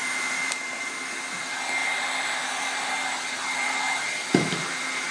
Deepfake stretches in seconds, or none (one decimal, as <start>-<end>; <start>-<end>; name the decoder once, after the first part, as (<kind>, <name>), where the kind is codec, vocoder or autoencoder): 0.0-0.9 (vocoder, BigVGAN v2); 1.8-5.1